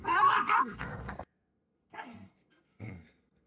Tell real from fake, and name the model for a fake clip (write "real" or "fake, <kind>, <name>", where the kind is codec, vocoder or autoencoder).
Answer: fake, codec, SNAC